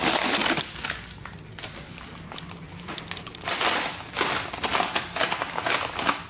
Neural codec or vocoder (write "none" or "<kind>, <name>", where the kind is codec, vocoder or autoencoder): none